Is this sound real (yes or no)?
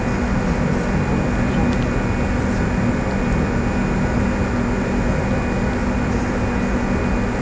yes